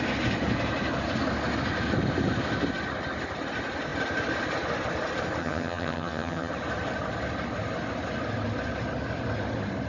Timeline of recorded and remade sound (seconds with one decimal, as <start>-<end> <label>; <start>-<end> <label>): 0.0-5.4 recorded; 5.4-6.5 remade; 6.5-9.9 recorded